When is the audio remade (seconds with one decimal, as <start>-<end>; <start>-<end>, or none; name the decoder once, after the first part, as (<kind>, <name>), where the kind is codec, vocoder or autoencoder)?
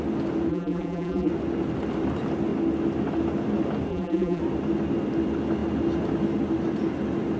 0.5-1.3 (vocoder, BigVGAN v2); 3.9-4.4